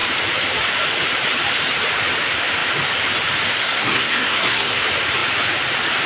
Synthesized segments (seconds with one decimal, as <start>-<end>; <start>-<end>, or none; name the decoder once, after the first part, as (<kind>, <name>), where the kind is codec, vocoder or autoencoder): 3.6-4.8 (codec, SNAC)